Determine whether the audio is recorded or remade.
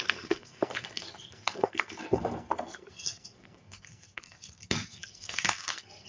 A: remade